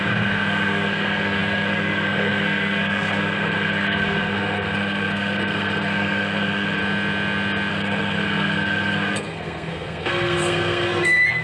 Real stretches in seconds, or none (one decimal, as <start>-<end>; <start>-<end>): 6.8-7.7